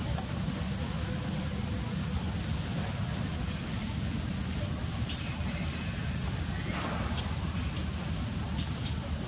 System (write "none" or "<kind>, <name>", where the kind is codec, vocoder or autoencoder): none